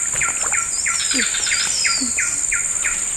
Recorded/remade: recorded